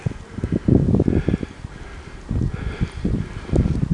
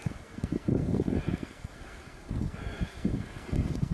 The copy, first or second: second